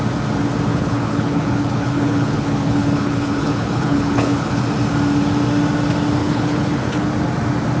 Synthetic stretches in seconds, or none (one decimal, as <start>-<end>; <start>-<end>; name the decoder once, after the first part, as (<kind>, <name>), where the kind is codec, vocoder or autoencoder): 0.7-4.6 (codec, HILCodec); 6.2-7.1